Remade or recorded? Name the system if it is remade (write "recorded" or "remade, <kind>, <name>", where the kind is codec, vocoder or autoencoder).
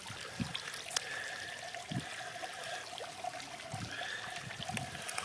recorded